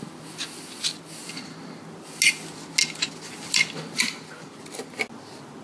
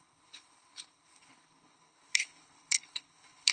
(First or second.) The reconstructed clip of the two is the second